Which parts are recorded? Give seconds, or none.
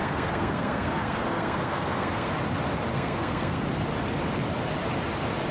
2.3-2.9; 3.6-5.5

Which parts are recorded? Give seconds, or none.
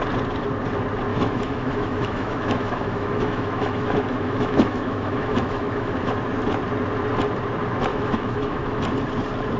0.0-1.1; 6.1-7.9; 8.8-9.6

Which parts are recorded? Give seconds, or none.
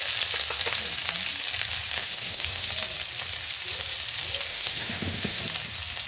0.0-2.0; 2.7-4.5; 5.4-6.1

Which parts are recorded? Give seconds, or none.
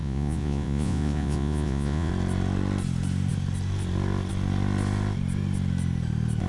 2.1-6.5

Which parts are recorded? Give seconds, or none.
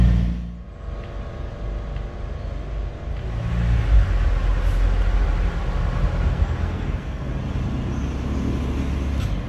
0.0-6.3; 7.3-9.5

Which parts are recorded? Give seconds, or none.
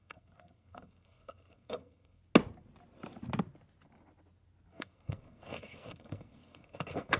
2.2-4.7